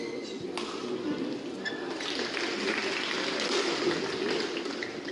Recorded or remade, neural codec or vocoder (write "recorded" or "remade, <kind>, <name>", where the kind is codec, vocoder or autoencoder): recorded